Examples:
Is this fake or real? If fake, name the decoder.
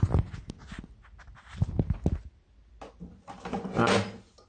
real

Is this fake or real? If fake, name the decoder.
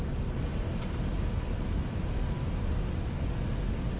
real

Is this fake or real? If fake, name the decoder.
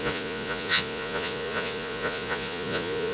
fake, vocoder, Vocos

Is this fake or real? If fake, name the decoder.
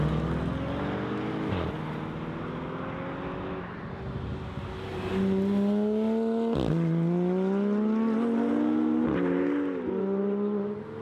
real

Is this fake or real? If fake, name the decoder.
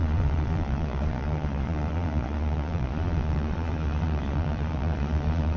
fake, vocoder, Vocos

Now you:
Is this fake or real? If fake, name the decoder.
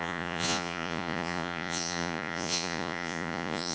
fake, vocoder, Vocos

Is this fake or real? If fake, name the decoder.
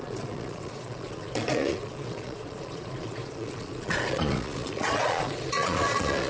fake, vocoder, Vocos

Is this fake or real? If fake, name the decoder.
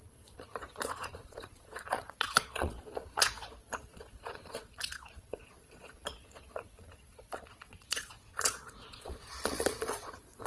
fake, vocoder, Vocos